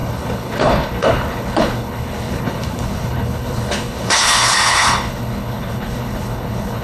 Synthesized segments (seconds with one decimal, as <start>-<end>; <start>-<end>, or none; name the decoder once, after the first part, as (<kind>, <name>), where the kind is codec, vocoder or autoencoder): 0.0-6.8 (codec, HILCodec)